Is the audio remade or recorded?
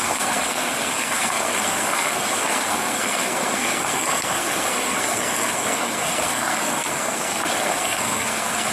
remade